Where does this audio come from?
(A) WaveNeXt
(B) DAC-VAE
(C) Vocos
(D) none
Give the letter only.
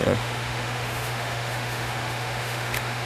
B